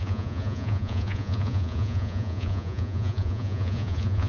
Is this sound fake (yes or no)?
yes